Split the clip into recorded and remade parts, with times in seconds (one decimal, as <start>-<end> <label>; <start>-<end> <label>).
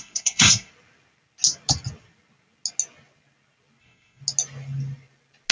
0.0-0.7 remade; 0.7-3.8 recorded; 3.8-4.2 remade; 4.2-5.5 recorded